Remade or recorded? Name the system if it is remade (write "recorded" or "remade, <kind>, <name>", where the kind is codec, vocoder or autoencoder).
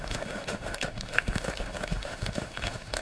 remade, autoencoder, DAC-VAE